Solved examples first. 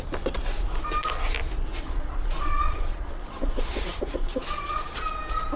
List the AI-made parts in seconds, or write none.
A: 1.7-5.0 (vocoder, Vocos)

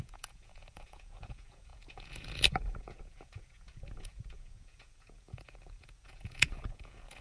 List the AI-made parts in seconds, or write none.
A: 0.0-7.2 (vocoder, Vocos)

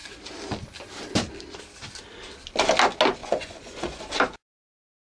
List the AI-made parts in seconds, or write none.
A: 3.2-4.1 (vocoder, Vocos)

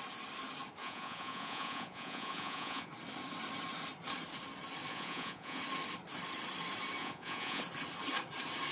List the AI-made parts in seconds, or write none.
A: 0.8-2.9 (vocoder, Vocos); 4.9-5.6; 7.0-7.6

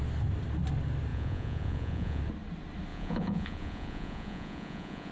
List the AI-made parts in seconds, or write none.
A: 1.1-2.2 (vocoder, Vocos); 2.9-5.1

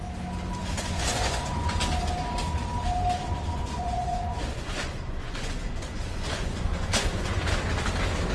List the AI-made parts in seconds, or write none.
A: 0.6-1.7 (vocoder, Vocos); 3.4-7.6

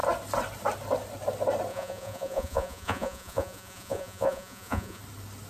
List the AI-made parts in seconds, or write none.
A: 1.7-5.0 (vocoder, Vocos)

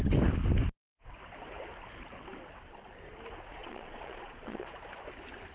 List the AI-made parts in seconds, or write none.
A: 3.6-5.0 (vocoder, Vocos)